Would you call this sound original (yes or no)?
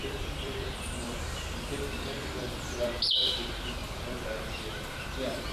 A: no